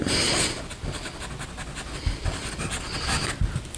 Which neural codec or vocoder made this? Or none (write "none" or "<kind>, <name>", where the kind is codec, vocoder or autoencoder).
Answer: none